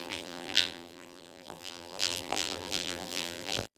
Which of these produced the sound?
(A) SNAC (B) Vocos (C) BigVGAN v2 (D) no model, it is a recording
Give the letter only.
C